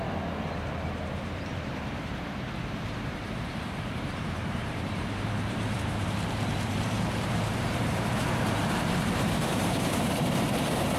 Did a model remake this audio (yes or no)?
yes